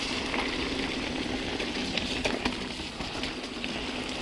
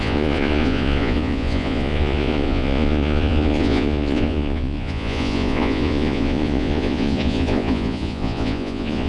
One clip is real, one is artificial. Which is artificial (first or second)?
second